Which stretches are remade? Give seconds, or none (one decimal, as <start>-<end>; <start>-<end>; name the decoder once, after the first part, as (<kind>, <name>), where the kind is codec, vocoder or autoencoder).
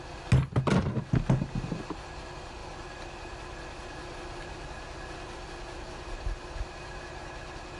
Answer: none